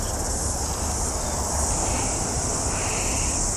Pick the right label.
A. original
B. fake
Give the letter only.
A